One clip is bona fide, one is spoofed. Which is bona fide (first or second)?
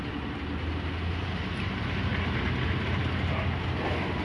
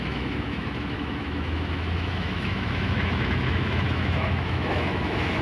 first